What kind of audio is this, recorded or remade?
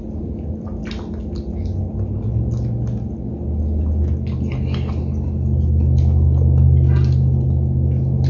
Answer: recorded